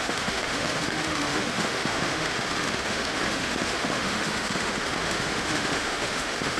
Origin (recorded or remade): remade